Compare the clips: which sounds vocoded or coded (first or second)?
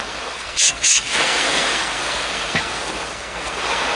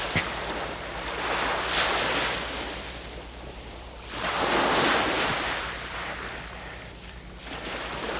first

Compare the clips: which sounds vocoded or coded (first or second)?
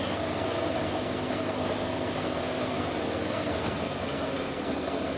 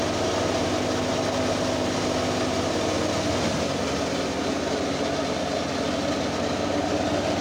first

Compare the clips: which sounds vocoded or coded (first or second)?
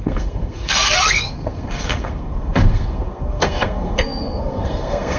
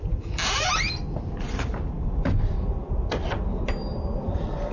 first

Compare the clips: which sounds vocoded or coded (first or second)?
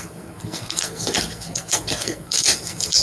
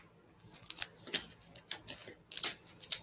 first